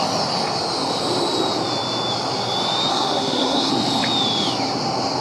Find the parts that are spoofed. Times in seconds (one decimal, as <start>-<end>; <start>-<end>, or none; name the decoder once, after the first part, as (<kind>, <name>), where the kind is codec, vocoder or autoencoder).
2.9-3.7 (codec, SNAC)